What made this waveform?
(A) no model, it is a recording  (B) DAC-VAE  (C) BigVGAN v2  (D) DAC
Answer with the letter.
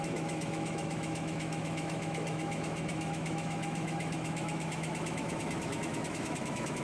B